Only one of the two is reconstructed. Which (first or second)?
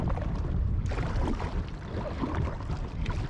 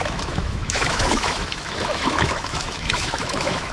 second